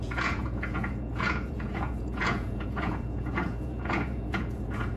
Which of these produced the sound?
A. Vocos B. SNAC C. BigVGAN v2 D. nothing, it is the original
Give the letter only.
A